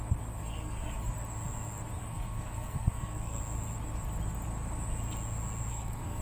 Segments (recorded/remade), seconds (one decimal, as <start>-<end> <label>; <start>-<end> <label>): 0.0-0.4 recorded; 0.4-1.1 remade; 1.1-2.0 recorded; 2.0-3.4 remade; 3.4-5.7 recorded; 5.7-6.2 remade